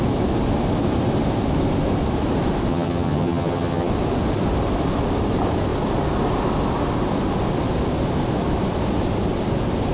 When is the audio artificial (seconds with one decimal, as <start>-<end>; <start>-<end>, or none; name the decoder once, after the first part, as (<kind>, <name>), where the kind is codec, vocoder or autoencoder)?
2.7-3.9 (vocoder, HiFi-GAN)